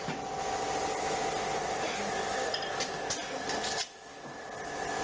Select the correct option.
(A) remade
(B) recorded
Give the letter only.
B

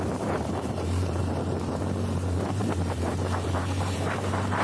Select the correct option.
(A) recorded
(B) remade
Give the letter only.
B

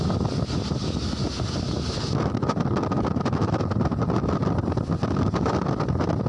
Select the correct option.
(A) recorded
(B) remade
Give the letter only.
A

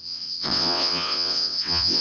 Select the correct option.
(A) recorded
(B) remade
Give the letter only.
B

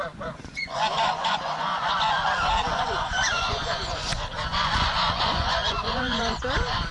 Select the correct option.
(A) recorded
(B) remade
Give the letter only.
B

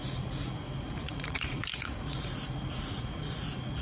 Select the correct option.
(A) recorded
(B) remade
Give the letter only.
B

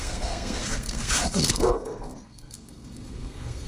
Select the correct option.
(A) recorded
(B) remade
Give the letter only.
B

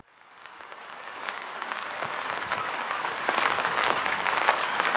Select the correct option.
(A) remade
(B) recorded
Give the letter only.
A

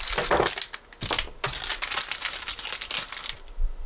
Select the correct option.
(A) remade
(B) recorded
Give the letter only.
B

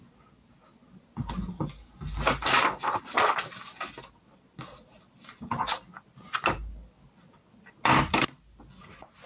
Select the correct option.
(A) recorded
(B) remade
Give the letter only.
A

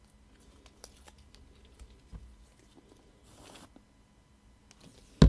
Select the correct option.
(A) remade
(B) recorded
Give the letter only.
B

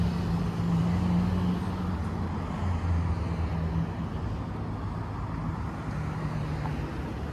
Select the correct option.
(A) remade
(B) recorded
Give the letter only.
B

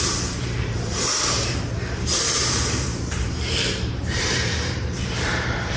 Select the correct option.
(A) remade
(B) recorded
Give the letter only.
A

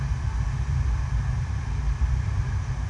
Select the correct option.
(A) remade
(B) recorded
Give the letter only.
B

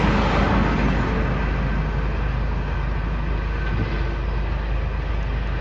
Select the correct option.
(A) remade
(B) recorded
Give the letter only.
B